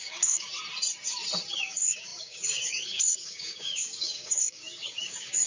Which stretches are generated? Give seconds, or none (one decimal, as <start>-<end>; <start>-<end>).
0.0-0.5; 1.5-5.5